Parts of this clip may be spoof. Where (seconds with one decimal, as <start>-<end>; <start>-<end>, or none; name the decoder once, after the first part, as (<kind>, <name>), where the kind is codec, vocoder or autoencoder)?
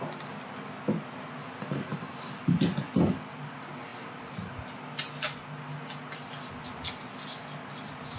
1.9-2.6 (vocoder, BigVGAN v2); 3.9-4.6